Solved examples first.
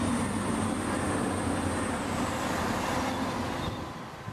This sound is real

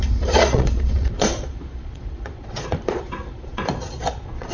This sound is fake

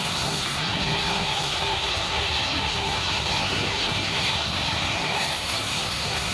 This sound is fake